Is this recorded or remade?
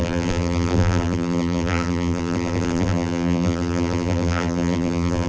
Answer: remade